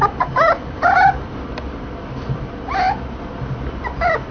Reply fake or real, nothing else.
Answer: fake